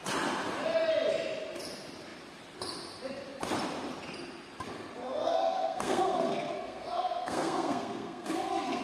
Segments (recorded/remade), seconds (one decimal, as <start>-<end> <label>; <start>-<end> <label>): 0.0-5.0 recorded; 5.0-8.8 remade